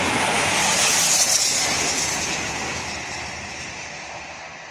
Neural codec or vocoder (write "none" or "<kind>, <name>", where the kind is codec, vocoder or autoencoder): none